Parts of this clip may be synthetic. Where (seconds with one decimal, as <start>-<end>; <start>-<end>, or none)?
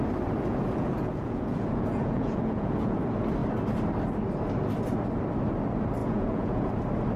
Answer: 0.5-3.0; 6.0-6.7